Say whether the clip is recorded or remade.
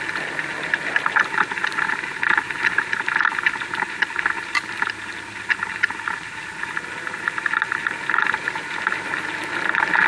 recorded